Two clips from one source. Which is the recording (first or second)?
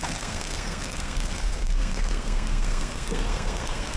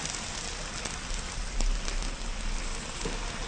second